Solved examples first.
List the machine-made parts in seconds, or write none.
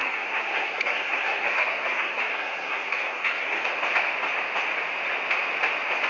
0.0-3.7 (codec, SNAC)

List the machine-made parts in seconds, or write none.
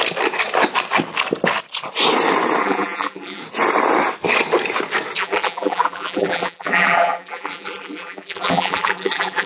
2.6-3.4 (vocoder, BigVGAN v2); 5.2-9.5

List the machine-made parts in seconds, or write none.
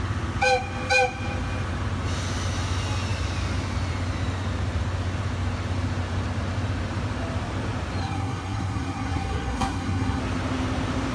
8.0-10.2 (codec, SNAC)